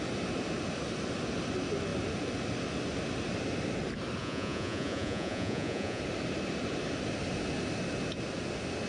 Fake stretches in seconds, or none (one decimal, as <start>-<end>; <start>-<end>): 4.2-6.0